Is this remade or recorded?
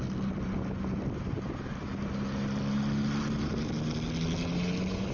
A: recorded